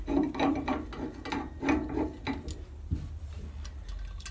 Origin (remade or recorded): recorded